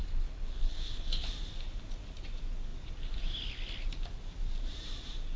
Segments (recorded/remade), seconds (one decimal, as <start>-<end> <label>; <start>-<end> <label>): 0.0-1.3 remade; 1.3-5.4 recorded